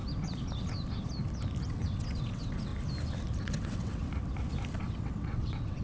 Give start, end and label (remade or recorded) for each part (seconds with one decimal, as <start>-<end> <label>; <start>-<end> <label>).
0.0-1.6 recorded; 1.6-2.7 remade; 2.7-3.4 recorded; 3.4-4.0 remade; 4.0-4.8 recorded; 4.8-5.8 remade

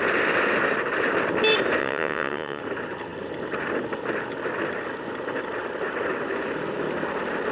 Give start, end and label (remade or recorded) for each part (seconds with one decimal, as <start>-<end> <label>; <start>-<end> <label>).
0.0-1.8 recorded; 1.8-2.6 remade; 2.6-7.5 recorded

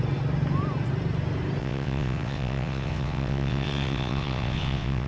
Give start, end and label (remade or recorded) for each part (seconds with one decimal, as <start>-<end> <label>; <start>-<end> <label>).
0.0-1.6 recorded; 1.6-5.1 remade

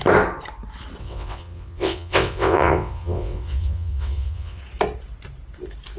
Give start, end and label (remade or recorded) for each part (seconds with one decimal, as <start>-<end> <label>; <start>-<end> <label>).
0.0-1.0 recorded; 1.0-4.6 remade; 4.6-6.0 recorded

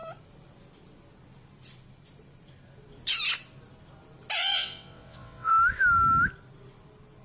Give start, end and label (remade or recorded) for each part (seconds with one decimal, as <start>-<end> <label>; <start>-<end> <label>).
0.0-4.4 recorded; 4.4-5.5 remade; 5.5-7.2 recorded

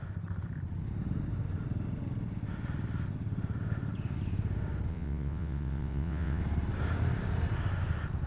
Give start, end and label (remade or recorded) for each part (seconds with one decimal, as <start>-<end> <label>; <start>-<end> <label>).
0.0-4.9 recorded; 4.9-6.4 remade; 6.4-8.3 recorded

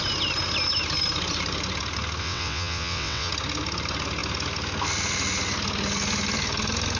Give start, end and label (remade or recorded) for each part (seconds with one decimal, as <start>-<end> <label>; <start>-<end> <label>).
0.0-2.2 recorded; 2.2-3.3 remade; 3.3-7.0 recorded